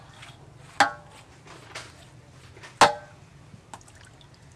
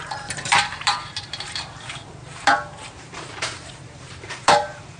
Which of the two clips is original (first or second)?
first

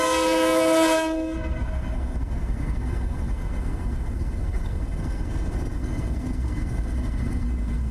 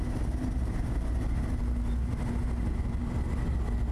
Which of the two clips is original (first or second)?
second